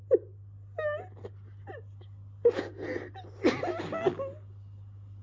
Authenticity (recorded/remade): recorded